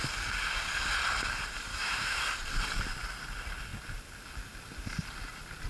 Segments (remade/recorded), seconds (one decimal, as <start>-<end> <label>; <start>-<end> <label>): 0.0-1.7 recorded; 1.7-2.2 remade; 2.2-5.7 recorded